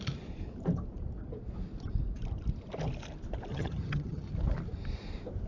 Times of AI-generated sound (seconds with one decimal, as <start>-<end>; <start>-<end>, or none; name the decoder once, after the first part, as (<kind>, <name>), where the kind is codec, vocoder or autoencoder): 3.5-4.3 (vocoder, HiFi-GAN)